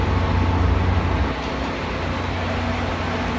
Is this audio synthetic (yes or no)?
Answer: no